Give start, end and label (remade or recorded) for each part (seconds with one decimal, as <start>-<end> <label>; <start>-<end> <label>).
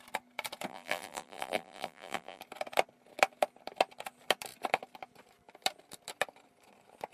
0.0-0.7 recorded; 0.7-2.4 remade; 2.4-7.1 recorded